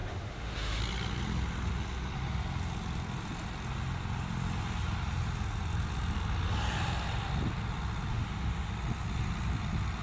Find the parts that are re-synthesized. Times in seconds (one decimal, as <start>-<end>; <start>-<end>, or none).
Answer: 0.0-0.8; 8.1-8.7